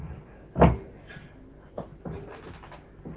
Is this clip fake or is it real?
real